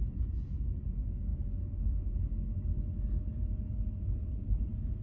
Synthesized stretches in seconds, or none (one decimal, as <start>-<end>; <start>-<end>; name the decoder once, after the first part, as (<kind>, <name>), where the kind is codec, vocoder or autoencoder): none